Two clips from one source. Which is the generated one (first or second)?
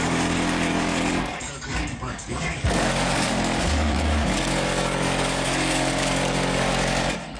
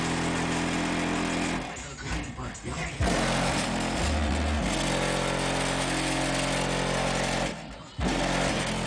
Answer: first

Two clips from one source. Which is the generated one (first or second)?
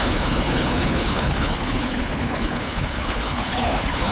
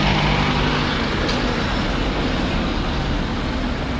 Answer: first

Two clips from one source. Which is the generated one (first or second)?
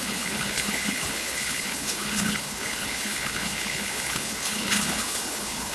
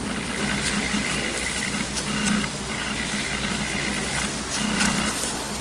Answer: first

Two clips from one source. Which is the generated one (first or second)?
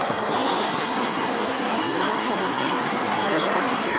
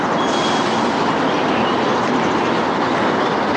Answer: first